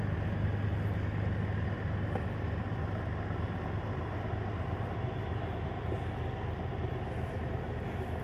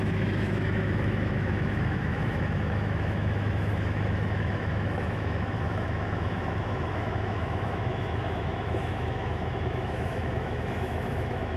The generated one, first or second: second